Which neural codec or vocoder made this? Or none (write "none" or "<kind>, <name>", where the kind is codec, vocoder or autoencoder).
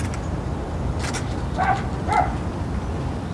none